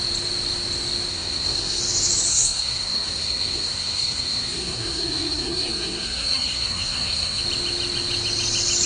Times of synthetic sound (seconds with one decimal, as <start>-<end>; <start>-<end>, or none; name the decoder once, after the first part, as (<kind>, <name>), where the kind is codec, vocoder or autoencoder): 1.1-1.8 (codec, SNAC); 2.3-7.4